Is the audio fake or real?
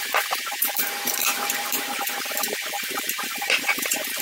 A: fake